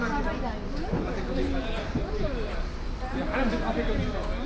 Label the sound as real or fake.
real